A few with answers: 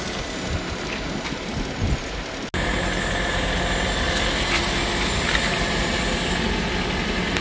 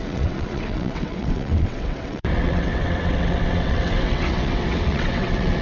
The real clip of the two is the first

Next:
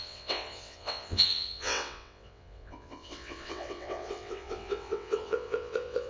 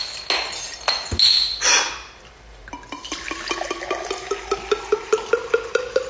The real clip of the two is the second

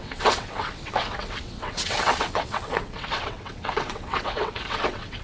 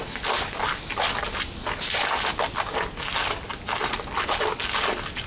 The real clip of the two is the second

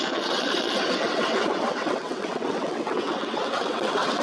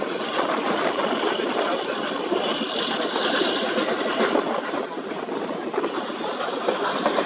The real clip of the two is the second